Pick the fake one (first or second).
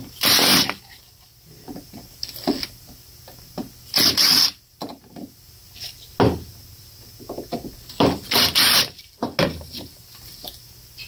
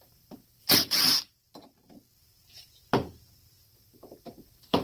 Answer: second